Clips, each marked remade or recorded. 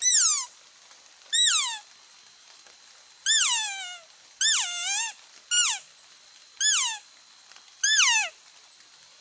recorded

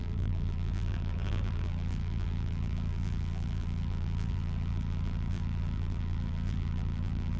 remade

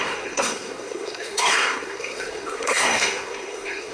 remade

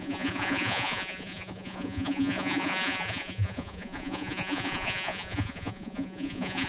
remade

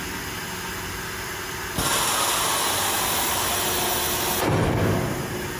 recorded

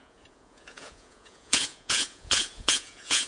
remade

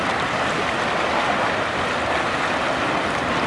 recorded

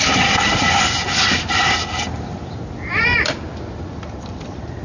recorded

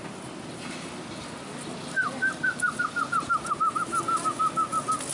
recorded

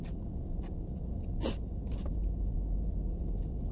recorded